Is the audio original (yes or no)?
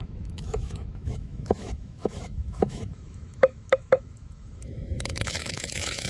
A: no